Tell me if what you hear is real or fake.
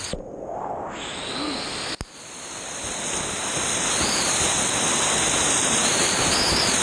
real